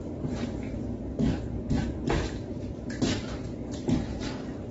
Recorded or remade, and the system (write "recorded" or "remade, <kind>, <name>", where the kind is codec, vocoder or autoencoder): recorded